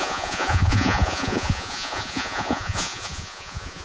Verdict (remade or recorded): remade